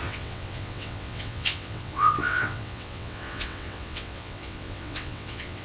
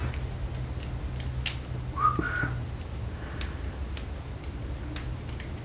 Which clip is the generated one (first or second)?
first